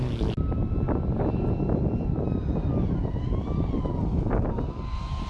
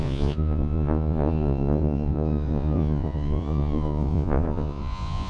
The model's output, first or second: second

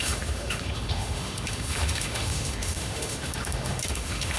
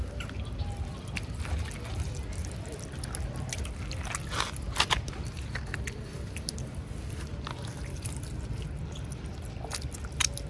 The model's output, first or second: first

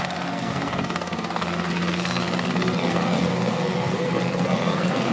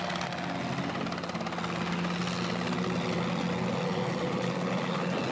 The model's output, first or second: first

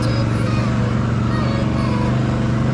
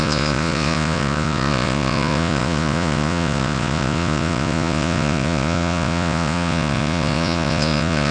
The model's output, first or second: second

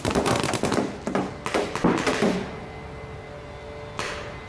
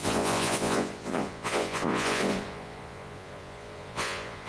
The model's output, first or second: second